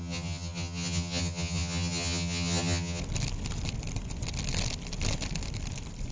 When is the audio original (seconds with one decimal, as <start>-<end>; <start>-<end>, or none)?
3.0-6.1